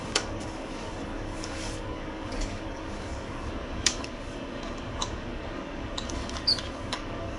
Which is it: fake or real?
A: fake